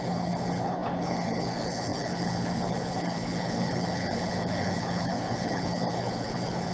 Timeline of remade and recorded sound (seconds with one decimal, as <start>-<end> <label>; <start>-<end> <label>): 0.0-6.7 remade